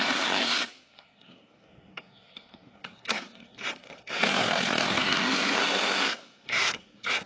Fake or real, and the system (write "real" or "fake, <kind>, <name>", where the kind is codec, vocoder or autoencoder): fake, codec, SNAC